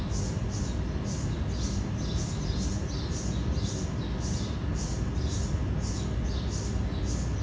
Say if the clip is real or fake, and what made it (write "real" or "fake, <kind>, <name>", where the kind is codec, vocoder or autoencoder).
real